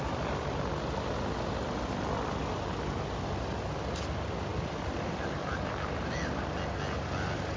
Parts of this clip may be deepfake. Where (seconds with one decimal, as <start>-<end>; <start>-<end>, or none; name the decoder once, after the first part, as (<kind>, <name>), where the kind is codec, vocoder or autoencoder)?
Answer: none